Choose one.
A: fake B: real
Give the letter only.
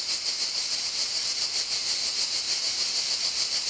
B